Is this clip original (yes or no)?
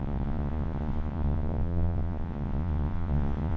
no